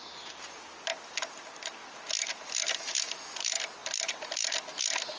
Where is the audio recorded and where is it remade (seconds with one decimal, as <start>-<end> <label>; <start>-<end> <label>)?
0.0-5.2 recorded